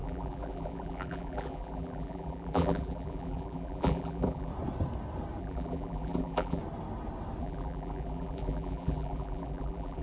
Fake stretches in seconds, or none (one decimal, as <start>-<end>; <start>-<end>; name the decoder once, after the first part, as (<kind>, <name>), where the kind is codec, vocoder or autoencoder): 0.0-4.5 (vocoder, BigVGAN v2); 5.4-6.6; 7.4-10.0